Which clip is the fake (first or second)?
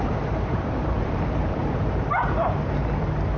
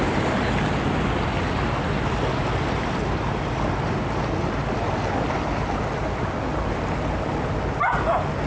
first